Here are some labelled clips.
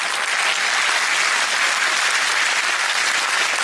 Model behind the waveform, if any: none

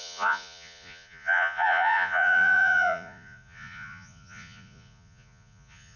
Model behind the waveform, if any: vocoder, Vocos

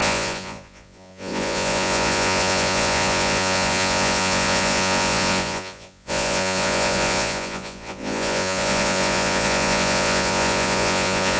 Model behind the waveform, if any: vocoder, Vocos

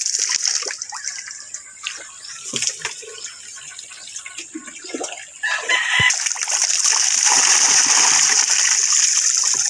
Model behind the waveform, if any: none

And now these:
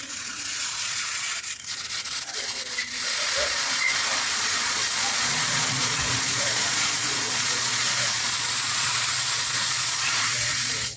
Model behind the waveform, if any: vocoder, Vocos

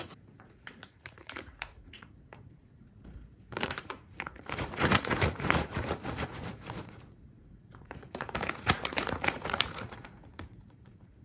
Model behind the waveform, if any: vocoder, Vocos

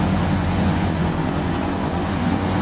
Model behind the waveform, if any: vocoder, Vocos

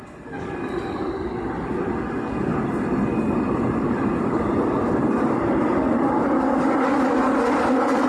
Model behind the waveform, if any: none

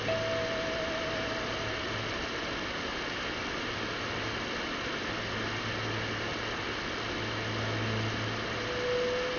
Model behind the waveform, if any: none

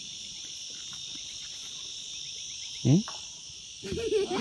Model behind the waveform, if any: none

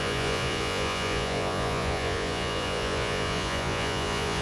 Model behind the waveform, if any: vocoder, Vocos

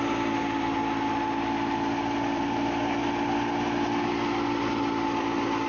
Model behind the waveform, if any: none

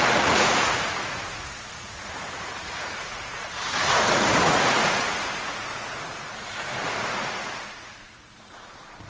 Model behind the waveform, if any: vocoder, Vocos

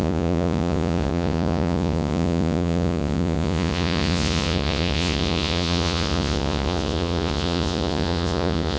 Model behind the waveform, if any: vocoder, Vocos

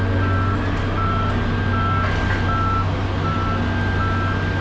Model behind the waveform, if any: none